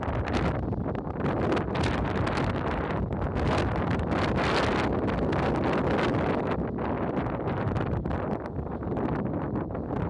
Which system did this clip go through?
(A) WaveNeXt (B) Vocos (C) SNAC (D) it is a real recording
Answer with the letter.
D